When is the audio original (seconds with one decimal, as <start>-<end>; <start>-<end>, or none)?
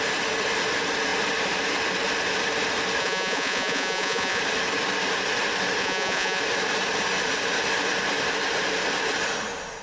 0.0-3.0; 4.4-5.8; 6.4-9.8